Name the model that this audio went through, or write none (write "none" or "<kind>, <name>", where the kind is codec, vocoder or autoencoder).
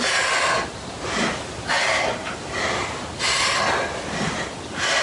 none